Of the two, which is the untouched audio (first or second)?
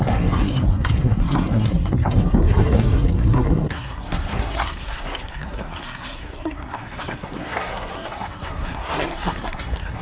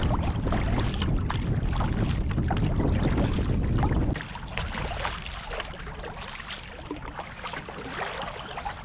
second